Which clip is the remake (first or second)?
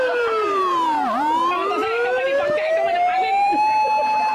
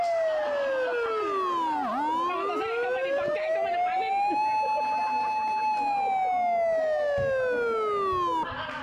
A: first